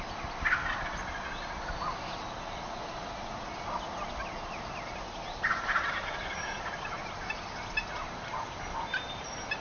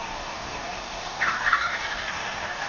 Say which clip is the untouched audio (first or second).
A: first